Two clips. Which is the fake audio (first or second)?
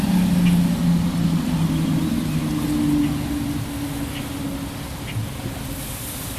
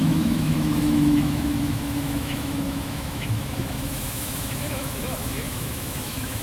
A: second